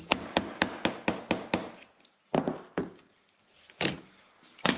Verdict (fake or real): real